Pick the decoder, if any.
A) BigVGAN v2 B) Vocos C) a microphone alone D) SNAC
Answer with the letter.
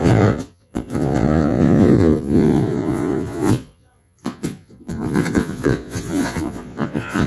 B